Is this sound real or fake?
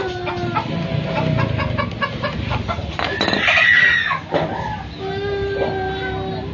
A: real